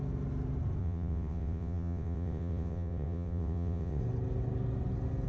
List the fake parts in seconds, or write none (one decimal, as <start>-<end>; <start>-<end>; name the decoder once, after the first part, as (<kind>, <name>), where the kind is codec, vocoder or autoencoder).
0.8-4.0 (vocoder, WaveNeXt)